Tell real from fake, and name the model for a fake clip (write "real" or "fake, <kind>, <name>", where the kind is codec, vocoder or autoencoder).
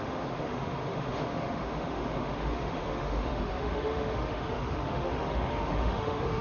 fake, autoencoder, DAC-VAE